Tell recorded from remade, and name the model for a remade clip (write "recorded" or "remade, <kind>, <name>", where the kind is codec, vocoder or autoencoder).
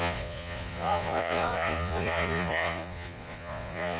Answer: remade, vocoder, Vocos